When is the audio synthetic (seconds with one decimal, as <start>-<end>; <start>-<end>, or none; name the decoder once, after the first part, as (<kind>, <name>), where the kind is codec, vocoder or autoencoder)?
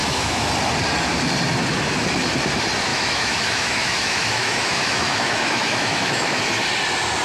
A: 0.0-0.5 (autoencoder, DAC-VAE); 2.9-6.4